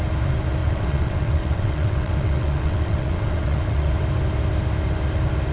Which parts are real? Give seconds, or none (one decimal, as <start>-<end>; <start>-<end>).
0.0-0.6; 3.9-5.5